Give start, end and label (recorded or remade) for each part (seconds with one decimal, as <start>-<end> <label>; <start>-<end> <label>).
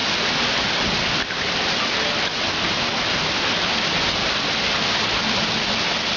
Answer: 0.0-6.2 recorded